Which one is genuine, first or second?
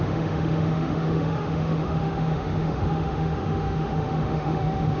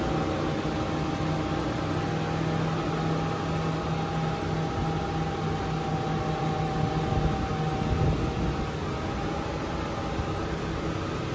second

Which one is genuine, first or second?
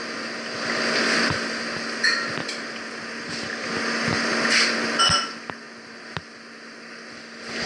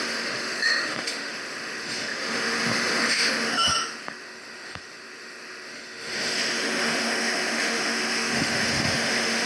first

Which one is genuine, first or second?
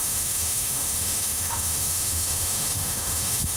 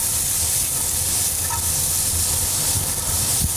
second